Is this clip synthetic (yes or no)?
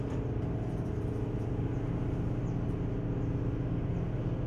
no